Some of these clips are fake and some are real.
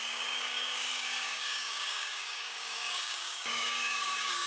fake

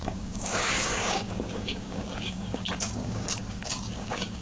fake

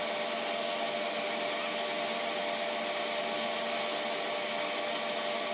real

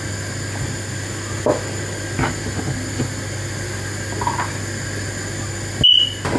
real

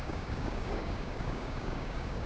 fake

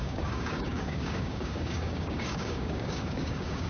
fake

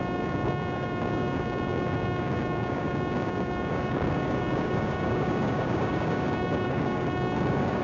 fake